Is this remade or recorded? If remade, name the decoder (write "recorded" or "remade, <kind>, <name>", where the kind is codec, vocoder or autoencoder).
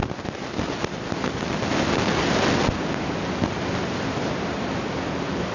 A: recorded